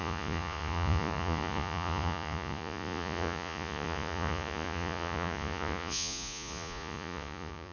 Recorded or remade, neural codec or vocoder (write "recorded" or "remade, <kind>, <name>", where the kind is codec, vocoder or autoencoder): remade, vocoder, Vocos